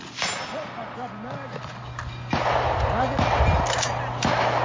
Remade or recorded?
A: recorded